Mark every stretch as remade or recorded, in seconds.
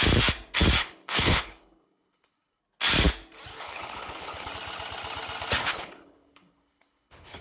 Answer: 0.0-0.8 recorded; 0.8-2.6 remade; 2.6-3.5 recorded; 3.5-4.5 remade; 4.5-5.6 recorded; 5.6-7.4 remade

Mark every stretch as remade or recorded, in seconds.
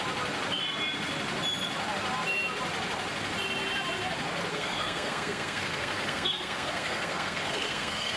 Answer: 0.0-4.5 recorded; 4.5-8.2 remade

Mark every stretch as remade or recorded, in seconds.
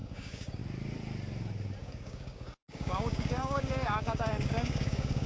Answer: 0.0-0.6 remade; 0.6-1.8 recorded; 1.8-5.3 remade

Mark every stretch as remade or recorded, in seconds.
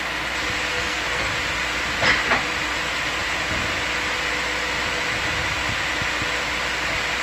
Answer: 0.0-0.7 recorded; 0.7-1.3 remade; 1.3-7.2 recorded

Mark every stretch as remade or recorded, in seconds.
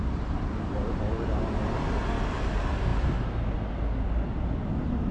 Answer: 0.0-2.2 remade; 2.2-5.1 recorded